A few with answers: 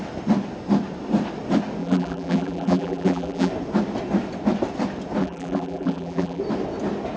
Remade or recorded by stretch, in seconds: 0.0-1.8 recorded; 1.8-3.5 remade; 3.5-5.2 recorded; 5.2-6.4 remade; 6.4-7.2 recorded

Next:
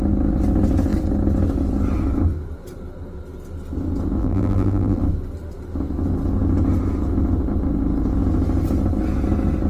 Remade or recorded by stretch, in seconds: 0.0-4.2 recorded; 4.2-5.0 remade; 5.0-9.7 recorded

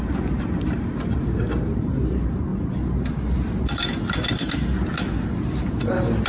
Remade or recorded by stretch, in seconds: 0.0-2.5 remade; 2.5-5.7 recorded; 5.7-6.3 remade

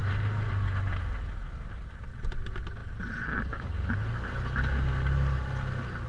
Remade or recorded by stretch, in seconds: 0.0-6.1 recorded

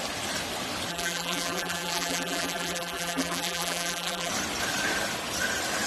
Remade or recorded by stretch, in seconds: 0.0-0.9 recorded; 0.9-4.3 remade; 4.3-5.9 recorded